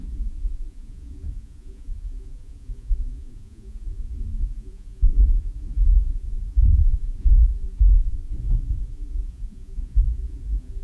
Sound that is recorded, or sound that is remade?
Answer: remade